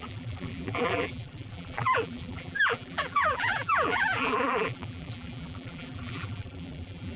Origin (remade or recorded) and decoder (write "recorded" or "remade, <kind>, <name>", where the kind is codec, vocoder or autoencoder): remade, vocoder, BigVGAN v2